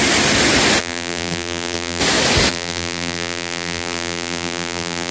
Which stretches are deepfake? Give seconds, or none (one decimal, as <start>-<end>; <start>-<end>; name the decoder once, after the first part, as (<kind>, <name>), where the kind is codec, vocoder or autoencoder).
0.8-2.0 (vocoder, BigVGAN v2); 2.5-5.1